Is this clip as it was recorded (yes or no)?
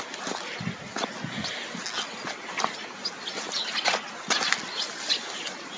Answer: yes